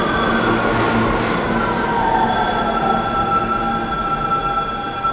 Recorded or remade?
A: recorded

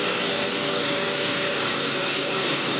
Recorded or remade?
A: remade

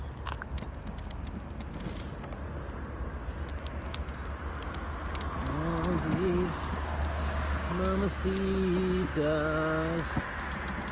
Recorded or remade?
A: recorded